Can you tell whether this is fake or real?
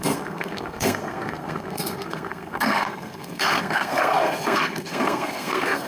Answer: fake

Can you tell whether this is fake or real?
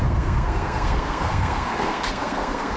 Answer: fake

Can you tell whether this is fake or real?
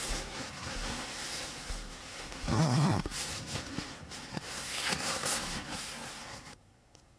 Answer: fake